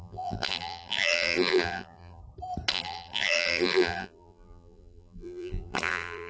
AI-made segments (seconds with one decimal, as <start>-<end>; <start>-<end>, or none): 0.0-2.2; 2.7-6.3